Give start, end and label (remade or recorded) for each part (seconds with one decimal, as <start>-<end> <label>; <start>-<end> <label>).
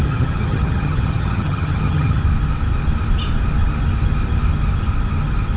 0.0-2.2 remade; 2.2-5.6 recorded